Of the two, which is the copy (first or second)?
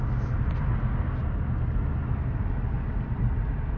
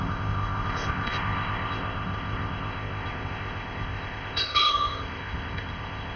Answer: second